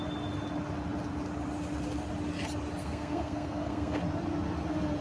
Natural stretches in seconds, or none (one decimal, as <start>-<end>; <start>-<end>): 0.0-2.8; 4.0-5.0